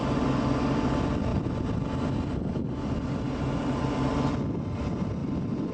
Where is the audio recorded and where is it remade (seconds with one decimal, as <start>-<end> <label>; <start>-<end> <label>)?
0.0-5.2 recorded; 5.2-5.7 remade